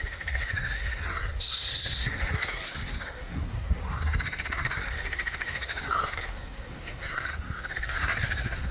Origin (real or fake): fake